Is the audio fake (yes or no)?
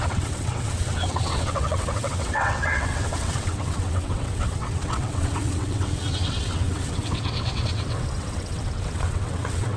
yes